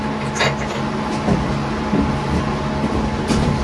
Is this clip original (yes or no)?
yes